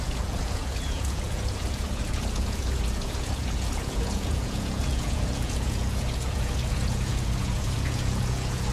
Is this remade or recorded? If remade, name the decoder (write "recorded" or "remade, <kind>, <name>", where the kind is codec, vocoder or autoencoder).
remade, vocoder, Vocos